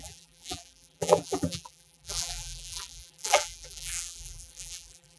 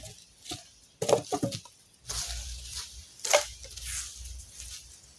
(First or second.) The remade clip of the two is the first